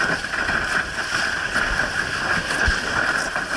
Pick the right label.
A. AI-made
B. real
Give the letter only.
B